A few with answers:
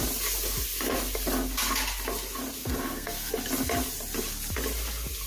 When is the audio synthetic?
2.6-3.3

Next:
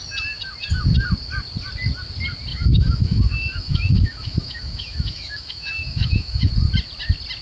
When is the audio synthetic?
2.5-6.5

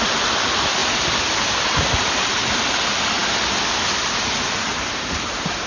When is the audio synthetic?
0.0-0.8; 1.8-5.7

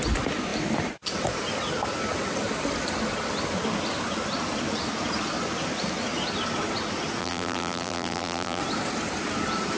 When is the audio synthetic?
7.2-8.6

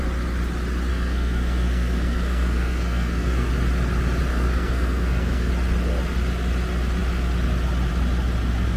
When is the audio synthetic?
0.9-3.5; 4.3-5.5

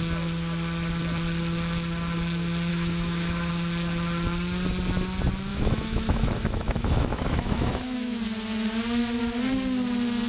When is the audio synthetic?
2.7-3.5; 5.5-8.2

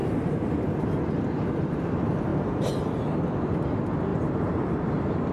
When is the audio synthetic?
2.3-3.2; 4.1-4.7